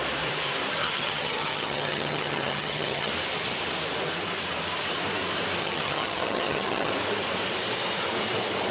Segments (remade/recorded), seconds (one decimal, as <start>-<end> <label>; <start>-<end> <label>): 0.0-0.8 recorded; 0.8-3.1 remade; 3.1-5.6 recorded; 5.6-6.9 remade; 6.9-8.7 recorded